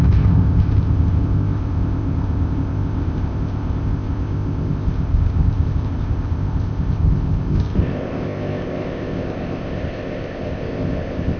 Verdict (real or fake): fake